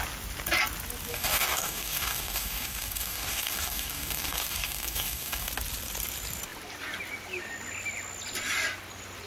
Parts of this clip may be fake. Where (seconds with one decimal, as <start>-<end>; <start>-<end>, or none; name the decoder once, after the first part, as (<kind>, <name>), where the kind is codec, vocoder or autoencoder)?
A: 1.1-5.5 (codec, DAC)